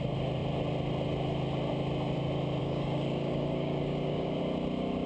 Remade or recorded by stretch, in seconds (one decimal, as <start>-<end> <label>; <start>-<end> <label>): 0.0-2.6 recorded; 2.6-4.4 remade; 4.4-5.1 recorded